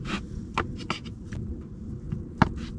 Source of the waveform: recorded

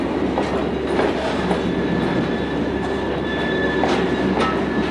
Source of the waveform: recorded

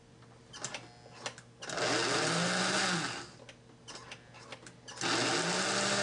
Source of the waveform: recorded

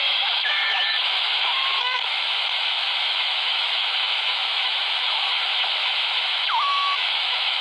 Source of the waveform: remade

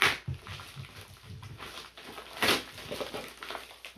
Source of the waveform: recorded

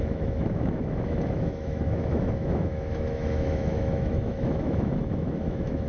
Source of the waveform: remade